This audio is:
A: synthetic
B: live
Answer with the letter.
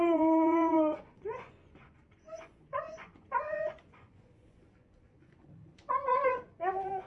A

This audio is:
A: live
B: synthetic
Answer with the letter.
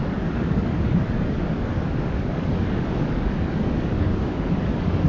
B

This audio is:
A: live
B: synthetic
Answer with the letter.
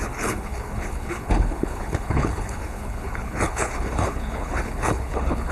B